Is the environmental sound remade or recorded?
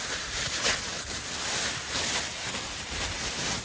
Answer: remade